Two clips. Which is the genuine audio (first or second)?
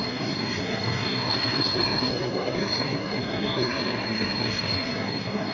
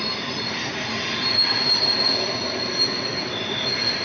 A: second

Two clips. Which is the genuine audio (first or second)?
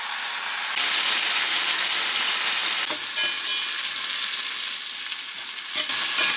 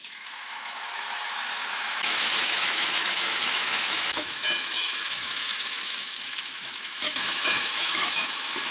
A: first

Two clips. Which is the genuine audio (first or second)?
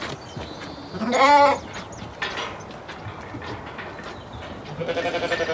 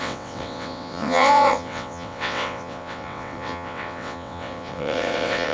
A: first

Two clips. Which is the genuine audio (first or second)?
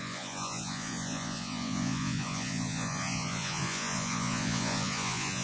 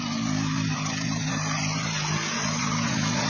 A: second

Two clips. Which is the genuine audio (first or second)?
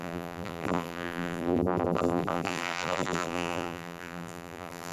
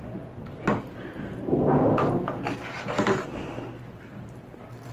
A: second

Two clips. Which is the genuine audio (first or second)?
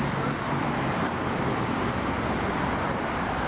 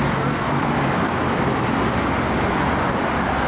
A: second